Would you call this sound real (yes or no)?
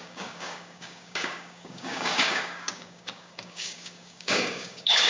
no